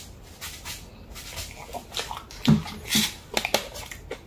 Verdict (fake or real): real